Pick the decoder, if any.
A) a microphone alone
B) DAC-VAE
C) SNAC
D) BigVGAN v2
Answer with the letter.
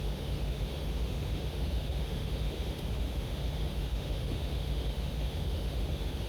B